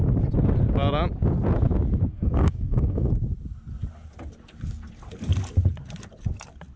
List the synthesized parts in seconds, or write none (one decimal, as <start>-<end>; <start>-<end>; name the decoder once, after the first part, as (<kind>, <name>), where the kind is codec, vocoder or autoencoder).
2.1-3.1 (codec, DAC)